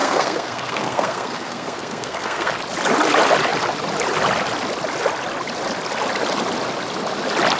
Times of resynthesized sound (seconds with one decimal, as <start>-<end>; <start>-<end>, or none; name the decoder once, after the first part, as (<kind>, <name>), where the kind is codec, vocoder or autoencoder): 0.0-2.5 (codec, SNAC)